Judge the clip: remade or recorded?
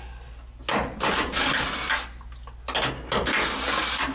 recorded